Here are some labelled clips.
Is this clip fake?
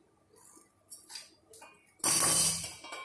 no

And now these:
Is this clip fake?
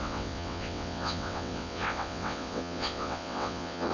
yes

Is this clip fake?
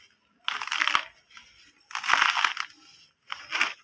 no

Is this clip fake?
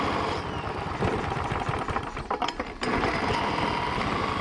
no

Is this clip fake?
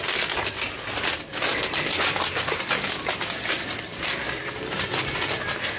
no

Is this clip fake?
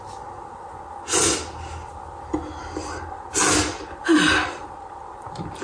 no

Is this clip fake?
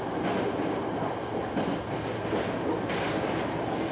no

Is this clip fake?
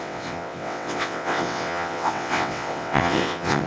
yes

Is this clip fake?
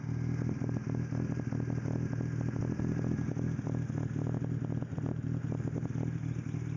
no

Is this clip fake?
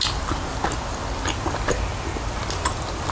no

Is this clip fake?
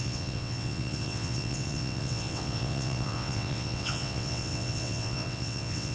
yes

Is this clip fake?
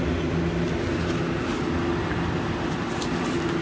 no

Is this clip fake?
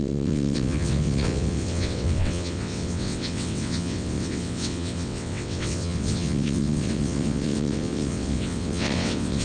yes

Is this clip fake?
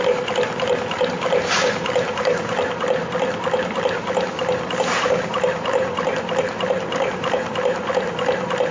no